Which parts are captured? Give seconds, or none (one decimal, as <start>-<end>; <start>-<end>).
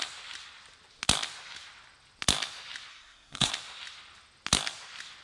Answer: 0.0-2.9; 3.5-5.2